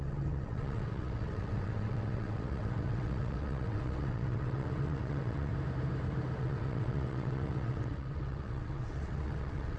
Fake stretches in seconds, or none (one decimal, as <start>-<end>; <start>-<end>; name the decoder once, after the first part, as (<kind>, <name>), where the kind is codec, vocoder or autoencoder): 0.0-5.5 (vocoder, WaveNeXt); 6.4-9.8